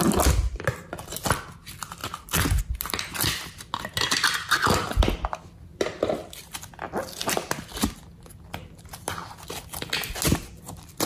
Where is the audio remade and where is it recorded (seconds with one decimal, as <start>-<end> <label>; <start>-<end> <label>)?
0.0-11.1 recorded